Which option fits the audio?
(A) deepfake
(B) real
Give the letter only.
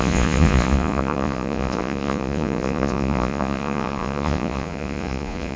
A